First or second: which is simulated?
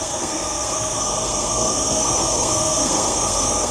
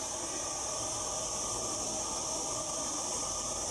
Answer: first